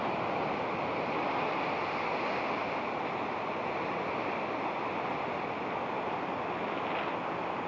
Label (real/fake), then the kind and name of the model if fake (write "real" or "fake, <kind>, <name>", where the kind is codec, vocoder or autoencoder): real